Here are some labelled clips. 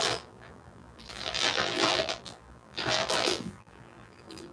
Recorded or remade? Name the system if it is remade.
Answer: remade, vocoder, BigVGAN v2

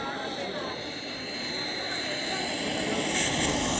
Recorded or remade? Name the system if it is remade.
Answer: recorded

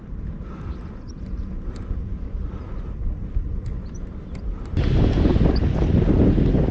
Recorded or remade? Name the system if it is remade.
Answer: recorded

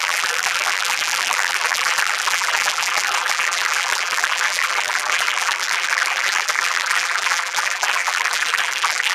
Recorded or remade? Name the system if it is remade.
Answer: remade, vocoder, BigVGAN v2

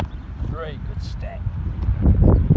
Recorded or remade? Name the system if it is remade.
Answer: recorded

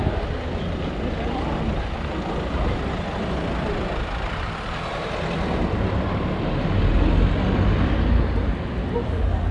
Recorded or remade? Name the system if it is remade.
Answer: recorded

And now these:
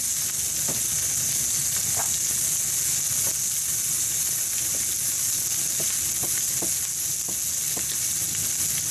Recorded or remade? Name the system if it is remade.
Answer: recorded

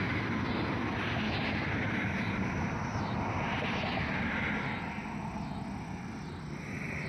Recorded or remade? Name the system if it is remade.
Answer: recorded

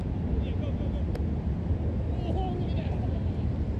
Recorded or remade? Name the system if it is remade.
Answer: recorded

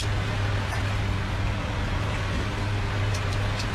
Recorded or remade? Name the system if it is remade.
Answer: recorded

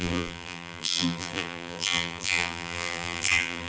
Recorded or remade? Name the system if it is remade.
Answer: remade, vocoder, BigVGAN v2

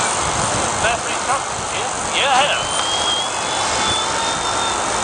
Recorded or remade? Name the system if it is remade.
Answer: remade, vocoder, BigVGAN v2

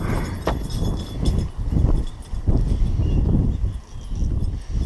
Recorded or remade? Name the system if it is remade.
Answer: recorded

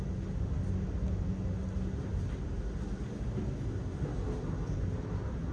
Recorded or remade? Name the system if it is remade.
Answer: recorded